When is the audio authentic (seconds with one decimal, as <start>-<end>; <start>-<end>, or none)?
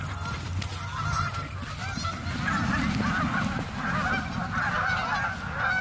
0.0-5.8